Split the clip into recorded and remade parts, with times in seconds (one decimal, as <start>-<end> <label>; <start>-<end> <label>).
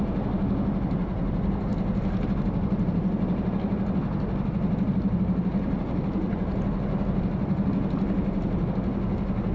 0.0-9.5 recorded